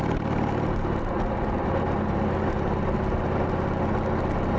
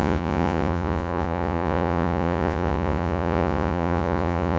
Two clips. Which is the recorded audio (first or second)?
first